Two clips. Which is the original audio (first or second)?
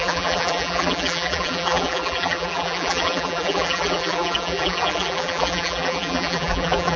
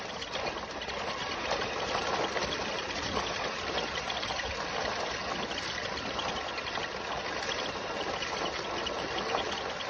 second